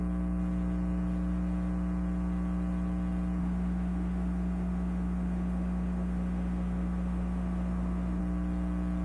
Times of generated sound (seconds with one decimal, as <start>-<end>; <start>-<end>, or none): 3.4-8.2